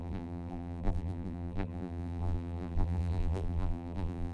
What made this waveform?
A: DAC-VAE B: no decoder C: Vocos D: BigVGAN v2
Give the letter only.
D